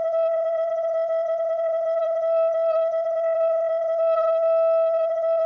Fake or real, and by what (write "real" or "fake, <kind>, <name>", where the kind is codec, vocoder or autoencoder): fake, codec, SNAC